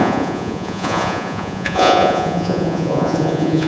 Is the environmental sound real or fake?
fake